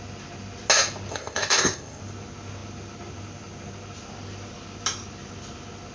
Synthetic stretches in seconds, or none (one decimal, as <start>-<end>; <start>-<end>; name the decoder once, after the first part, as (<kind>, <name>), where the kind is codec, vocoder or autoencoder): 1.1-2.0 (codec, ZipCodec)